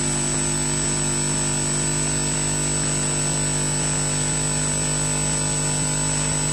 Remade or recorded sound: recorded